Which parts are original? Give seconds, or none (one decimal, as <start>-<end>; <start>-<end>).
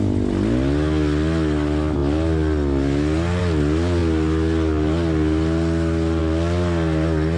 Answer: 0.0-7.4